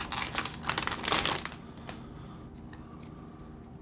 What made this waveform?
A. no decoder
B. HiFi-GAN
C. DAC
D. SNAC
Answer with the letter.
A